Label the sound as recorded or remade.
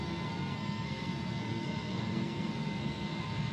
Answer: remade